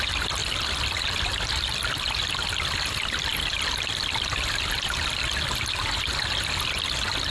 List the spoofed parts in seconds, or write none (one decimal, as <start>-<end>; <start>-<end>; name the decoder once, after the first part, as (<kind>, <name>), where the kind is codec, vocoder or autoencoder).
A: none

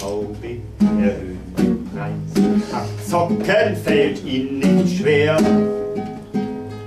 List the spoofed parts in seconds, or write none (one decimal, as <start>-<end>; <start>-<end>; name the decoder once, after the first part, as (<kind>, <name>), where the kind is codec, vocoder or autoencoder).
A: 1.4-2.7 (vocoder, BigVGAN v2)

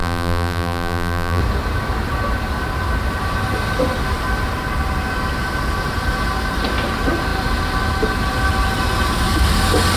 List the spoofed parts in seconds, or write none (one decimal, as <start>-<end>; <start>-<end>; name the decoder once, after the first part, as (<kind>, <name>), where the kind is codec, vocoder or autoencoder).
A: 0.0-1.4 (vocoder, BigVGAN v2)

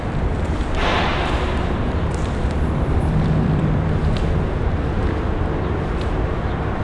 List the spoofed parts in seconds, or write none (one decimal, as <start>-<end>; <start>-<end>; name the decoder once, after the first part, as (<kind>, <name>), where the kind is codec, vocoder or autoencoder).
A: 0.0-1.1 (vocoder, BigVGAN v2); 1.6-6.8